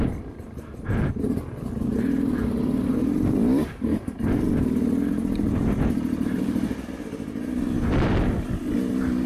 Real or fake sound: fake